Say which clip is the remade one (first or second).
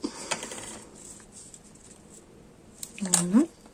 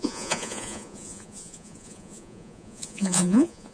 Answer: second